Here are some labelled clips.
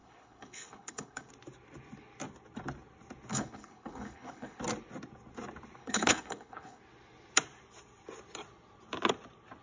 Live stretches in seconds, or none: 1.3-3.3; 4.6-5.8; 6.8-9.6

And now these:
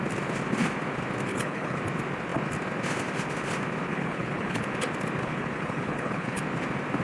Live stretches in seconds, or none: 0.0-1.3; 1.8-3.9; 4.6-5.2; 6.4-7.0